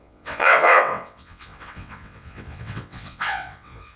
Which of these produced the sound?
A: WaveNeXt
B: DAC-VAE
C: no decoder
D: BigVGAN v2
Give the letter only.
A